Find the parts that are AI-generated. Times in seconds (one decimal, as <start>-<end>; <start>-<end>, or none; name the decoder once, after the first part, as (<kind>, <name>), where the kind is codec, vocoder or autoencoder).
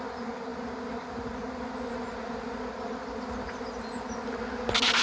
none